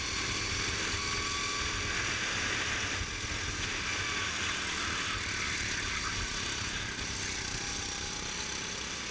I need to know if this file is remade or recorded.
recorded